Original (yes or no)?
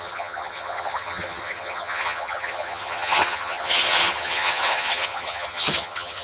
no